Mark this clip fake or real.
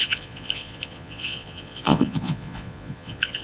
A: fake